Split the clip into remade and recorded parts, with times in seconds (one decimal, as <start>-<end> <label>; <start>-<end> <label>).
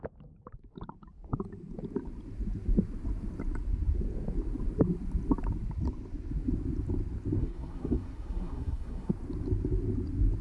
0.0-7.4 recorded; 7.4-9.1 remade; 9.1-10.4 recorded